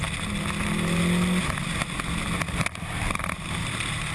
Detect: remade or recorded recorded